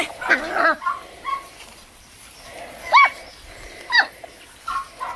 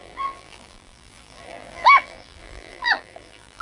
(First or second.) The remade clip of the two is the second